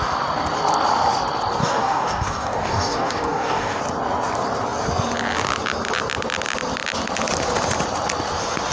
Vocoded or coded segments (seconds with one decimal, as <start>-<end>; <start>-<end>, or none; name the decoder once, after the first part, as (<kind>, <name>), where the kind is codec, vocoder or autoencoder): 1.6-3.8 (codec, DAC)